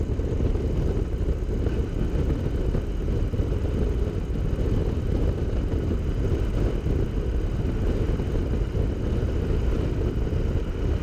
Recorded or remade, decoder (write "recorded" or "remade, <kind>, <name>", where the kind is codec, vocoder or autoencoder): recorded